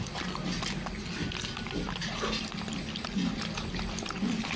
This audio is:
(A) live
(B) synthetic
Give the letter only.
A